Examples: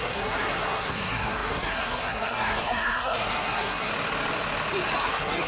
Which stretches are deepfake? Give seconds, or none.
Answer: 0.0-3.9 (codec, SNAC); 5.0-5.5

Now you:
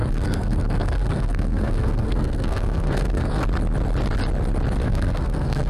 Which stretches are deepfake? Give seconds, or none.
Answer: 0.0-3.4 (codec, SNAC); 4.8-5.7

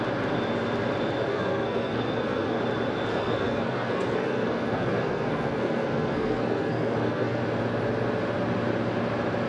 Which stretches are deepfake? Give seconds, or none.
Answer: 1.3-2.6 (codec, SNAC); 3.1-7.4

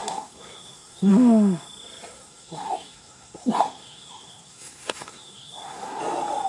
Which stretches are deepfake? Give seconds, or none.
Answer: 0.0-1.1 (codec, SNAC); 2.1-6.0

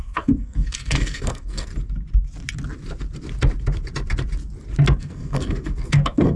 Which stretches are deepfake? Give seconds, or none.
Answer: 0.0-1.7 (codec, SNAC); 5.0-6.4